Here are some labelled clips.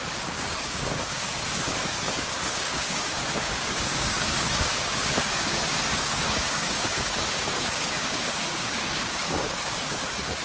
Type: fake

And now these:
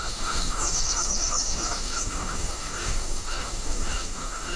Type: fake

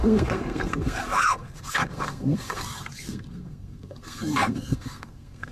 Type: fake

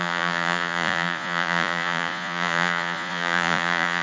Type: fake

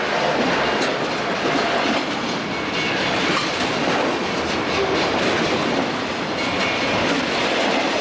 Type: real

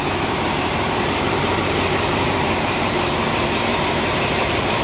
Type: fake